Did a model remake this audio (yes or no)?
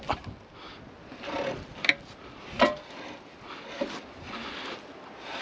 no